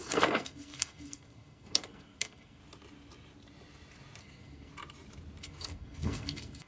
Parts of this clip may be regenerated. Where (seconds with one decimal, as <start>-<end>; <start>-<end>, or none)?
0.0-2.6; 4.2-4.7; 5.4-6.7

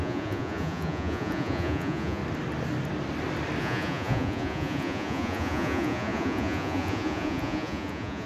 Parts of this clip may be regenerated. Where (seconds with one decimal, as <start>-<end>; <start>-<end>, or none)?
0.0-2.2; 3.6-8.3

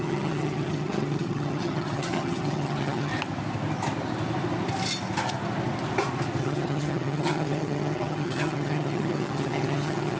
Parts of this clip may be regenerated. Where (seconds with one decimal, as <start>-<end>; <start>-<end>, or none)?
0.0-3.1; 6.4-10.2

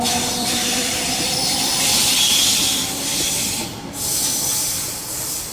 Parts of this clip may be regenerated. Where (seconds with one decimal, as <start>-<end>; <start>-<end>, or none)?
0.0-2.0; 3.8-5.5

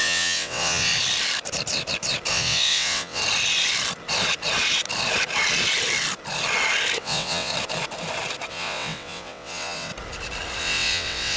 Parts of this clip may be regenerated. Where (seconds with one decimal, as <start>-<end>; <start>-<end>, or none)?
0.0-0.9; 2.3-3.2; 7.0-7.5; 8.5-9.9; 10.6-11.4

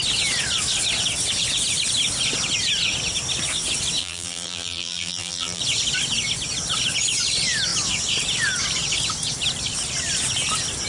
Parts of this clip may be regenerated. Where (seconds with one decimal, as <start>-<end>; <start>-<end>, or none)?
4.0-5.6

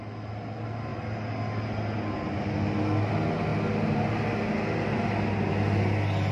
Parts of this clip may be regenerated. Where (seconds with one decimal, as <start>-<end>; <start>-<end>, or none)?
none